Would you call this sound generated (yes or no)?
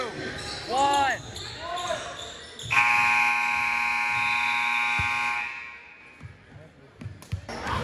no